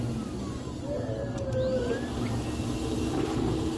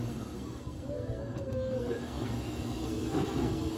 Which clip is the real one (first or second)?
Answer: first